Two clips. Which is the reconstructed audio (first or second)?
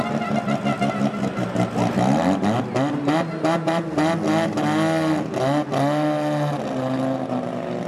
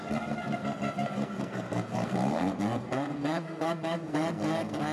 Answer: second